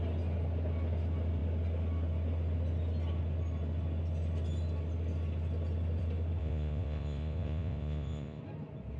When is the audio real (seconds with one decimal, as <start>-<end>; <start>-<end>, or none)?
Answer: 0.0-6.4; 8.4-9.0